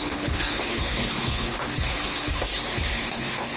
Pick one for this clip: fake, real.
fake